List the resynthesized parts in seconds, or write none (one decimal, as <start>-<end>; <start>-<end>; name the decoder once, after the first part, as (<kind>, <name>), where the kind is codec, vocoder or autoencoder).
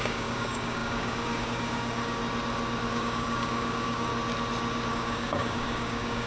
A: 0.0-2.2 (codec, DAC); 2.9-4.1; 4.9-6.3